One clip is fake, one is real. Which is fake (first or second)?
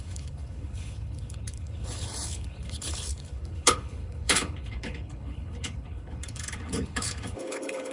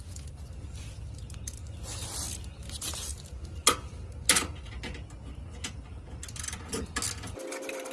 first